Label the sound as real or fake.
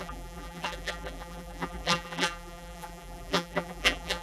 fake